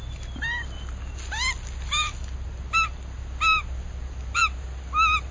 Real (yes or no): yes